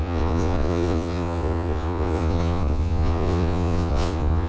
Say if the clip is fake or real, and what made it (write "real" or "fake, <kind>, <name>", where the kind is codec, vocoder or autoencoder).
fake, vocoder, Vocos